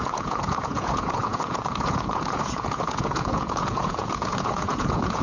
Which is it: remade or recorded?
remade